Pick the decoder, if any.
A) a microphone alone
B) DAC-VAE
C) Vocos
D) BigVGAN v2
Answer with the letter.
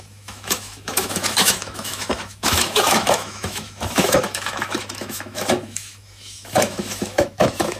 B